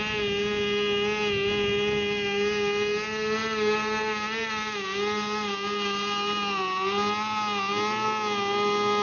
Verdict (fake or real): real